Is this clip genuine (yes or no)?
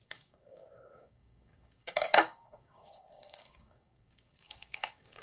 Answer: no